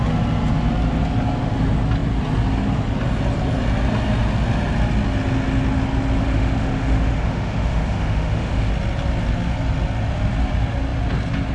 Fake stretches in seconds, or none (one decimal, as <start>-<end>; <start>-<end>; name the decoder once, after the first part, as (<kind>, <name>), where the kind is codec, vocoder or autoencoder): 6.2-8.7 (autoencoder, DAC-VAE)